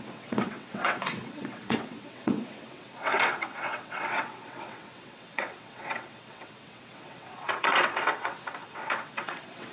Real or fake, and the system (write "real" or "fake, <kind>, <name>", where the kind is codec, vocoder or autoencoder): fake, vocoder, WaveNeXt